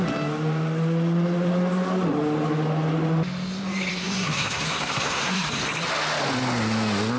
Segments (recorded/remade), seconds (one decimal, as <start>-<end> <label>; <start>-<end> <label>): 0.0-3.9 recorded; 3.9-5.5 remade; 5.5-7.2 recorded